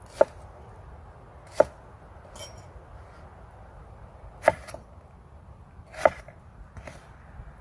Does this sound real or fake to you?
real